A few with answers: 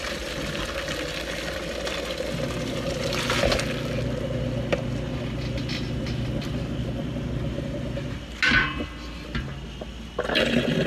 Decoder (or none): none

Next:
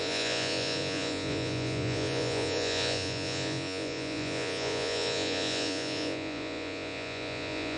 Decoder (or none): vocoder, Vocos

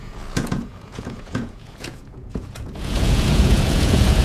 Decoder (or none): vocoder, Vocos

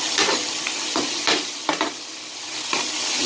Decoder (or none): none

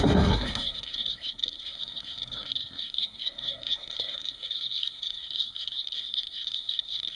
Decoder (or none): codec, SNAC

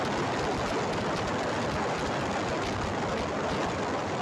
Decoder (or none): none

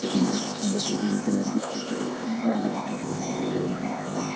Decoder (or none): codec, ZipCodec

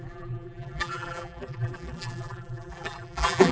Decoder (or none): vocoder, BigVGAN v2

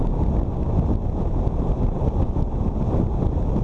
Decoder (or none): none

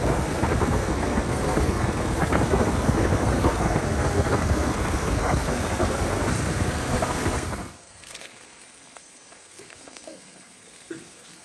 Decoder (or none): codec, SNAC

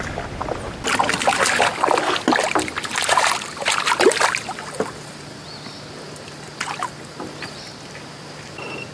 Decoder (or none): none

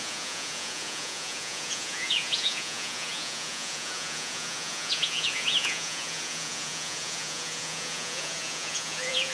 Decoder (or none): vocoder, Vocos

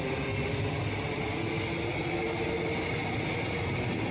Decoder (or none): none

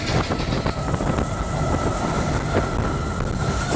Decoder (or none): none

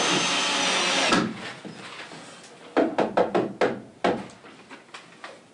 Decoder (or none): none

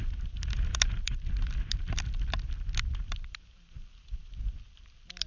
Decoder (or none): vocoder, BigVGAN v2